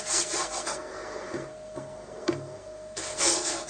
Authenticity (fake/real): fake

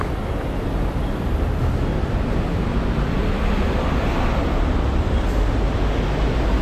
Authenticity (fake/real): real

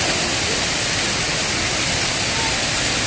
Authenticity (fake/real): real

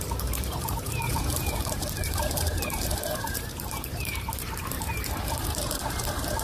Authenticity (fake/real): fake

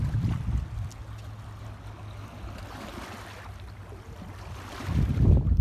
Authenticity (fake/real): real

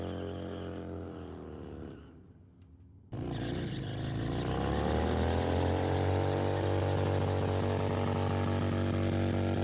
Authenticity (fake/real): real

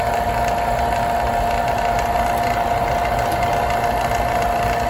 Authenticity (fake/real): real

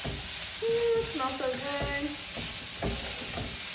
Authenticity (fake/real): real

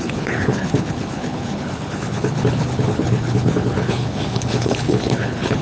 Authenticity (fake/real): fake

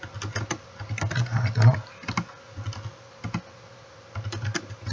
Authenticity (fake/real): real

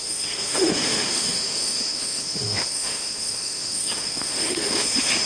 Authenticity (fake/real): fake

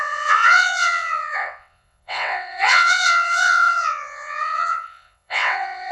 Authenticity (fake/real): fake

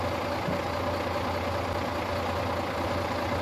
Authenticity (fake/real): real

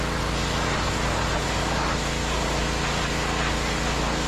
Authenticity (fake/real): real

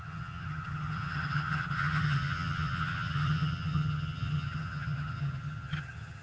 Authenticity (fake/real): fake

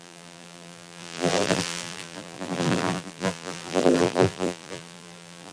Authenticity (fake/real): fake